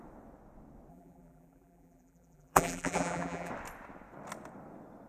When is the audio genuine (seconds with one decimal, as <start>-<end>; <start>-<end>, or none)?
0.0-0.9; 3.5-5.1